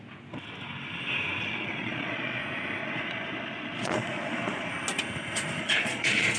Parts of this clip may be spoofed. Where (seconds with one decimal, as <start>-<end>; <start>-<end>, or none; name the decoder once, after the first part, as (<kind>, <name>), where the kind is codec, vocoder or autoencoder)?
1.4-2.4 (vocoder, Vocos); 2.8-4.7; 5.6-6.4